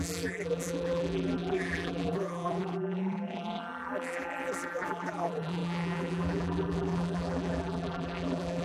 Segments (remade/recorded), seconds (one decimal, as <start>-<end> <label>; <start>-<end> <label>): 0.0-8.6 remade